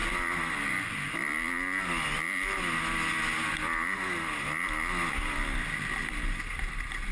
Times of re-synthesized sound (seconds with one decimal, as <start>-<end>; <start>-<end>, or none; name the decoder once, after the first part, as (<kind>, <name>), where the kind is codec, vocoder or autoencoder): none